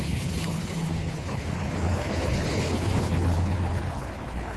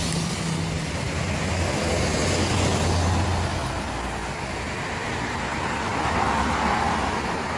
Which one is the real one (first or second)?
second